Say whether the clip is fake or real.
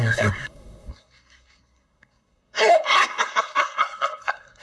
fake